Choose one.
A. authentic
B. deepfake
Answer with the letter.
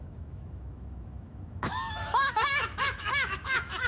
B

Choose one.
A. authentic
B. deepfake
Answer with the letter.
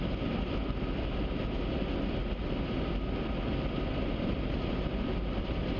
A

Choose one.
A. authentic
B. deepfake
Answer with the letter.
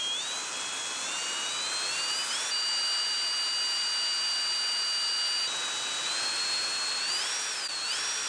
A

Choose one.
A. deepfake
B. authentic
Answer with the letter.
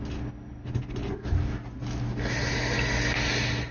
B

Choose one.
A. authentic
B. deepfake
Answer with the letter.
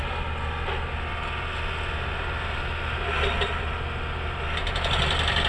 A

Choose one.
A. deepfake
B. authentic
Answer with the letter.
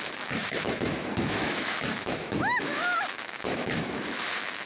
A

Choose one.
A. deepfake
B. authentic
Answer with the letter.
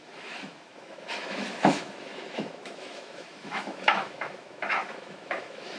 A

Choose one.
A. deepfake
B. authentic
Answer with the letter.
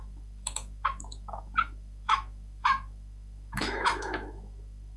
A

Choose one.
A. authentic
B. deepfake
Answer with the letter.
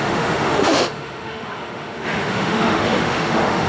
B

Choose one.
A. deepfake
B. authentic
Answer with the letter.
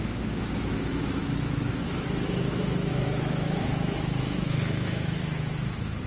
A